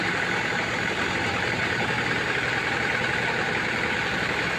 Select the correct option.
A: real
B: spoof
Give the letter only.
A